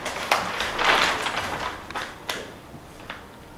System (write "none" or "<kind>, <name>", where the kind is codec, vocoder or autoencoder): vocoder, BigVGAN v2